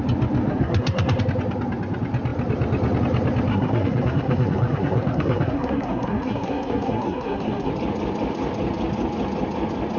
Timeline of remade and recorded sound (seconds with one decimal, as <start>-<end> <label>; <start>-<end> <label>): 0.0-0.5 recorded; 0.5-1.2 remade; 1.2-3.5 recorded; 3.5-7.7 remade; 7.7-10.0 recorded